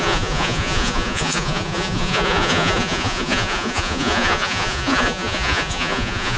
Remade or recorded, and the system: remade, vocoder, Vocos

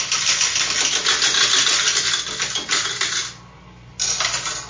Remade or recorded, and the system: recorded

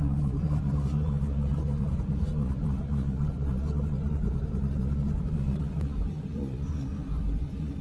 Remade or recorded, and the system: remade, vocoder, Vocos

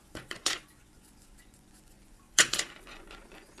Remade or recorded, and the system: remade, vocoder, Vocos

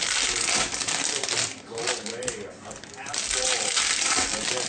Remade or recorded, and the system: recorded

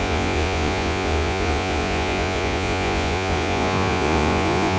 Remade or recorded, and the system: remade, vocoder, Vocos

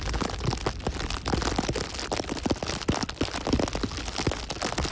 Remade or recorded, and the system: recorded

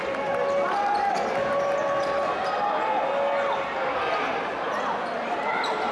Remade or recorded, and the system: recorded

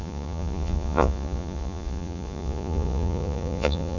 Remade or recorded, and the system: remade, vocoder, Vocos